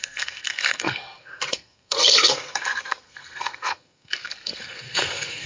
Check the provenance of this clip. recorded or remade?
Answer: remade